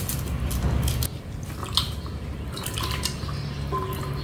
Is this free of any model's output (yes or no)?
yes